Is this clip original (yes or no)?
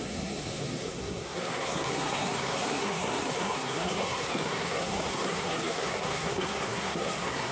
no